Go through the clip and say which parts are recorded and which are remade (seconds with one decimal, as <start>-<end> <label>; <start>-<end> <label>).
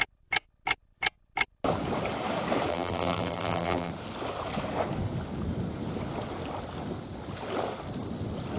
0.0-2.7 recorded; 2.7-3.9 remade; 3.9-8.6 recorded